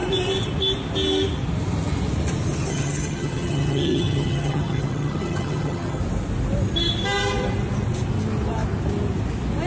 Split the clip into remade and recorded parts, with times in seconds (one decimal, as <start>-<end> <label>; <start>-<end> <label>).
0.0-2.7 recorded; 2.7-6.0 remade; 6.0-9.7 recorded